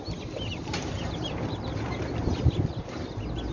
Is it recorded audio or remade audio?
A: recorded